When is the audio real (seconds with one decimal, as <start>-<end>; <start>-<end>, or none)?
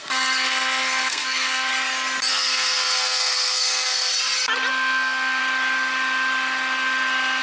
1.7-2.3; 4.1-4.7; 5.4-7.4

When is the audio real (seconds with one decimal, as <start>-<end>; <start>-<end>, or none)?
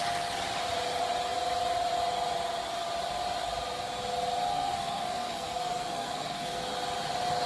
0.0-4.5; 6.6-7.5